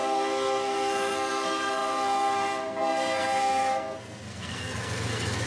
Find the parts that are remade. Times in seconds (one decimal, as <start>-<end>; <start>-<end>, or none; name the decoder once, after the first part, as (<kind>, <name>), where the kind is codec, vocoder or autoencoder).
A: 0.0-5.5 (codec, SNAC)